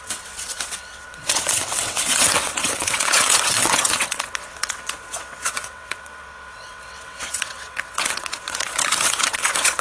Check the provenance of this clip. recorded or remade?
remade